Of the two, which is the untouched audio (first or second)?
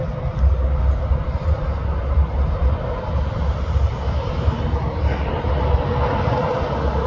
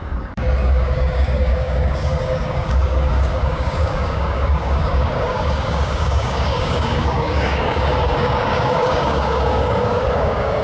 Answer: first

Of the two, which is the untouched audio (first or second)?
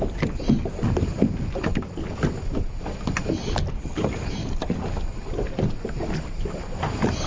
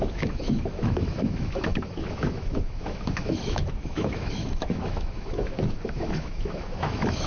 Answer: first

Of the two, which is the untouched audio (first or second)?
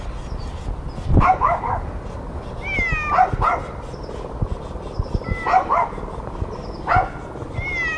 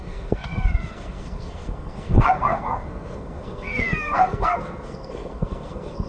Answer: first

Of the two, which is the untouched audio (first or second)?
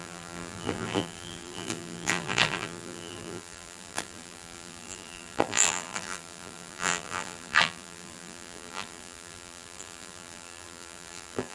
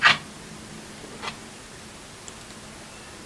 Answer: second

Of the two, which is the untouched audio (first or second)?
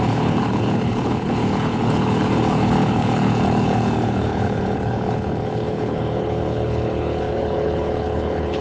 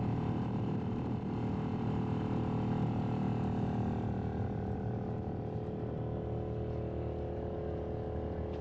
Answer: second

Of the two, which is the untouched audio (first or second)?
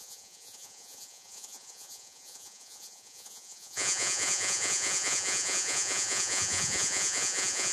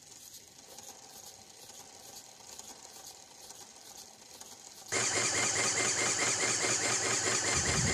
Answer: second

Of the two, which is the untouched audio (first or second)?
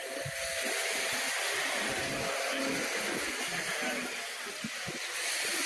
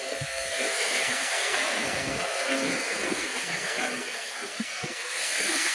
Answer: first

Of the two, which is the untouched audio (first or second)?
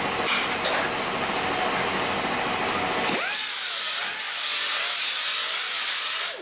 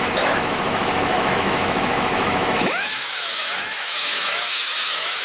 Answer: first